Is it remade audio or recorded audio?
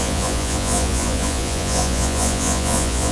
remade